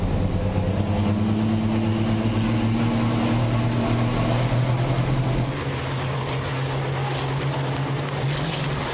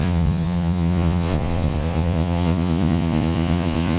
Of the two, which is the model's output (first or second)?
second